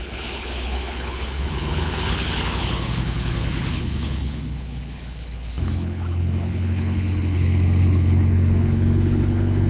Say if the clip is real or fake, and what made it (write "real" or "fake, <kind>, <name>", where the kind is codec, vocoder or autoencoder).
fake, codec, HILCodec